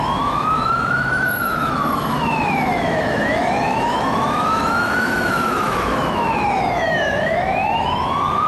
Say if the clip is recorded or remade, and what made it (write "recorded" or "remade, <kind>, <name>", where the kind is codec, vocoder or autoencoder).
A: remade, autoencoder, DAC-VAE